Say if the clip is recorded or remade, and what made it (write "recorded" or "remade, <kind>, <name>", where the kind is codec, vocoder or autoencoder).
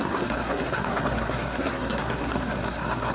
remade, codec, SNAC